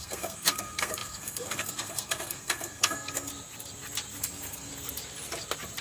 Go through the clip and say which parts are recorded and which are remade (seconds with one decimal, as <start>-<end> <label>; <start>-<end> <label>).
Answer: 0.0-3.3 remade; 3.3-4.2 recorded; 4.2-4.7 remade; 4.7-5.8 recorded